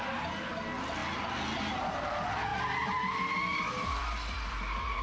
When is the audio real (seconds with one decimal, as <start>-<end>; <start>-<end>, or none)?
0.0-5.0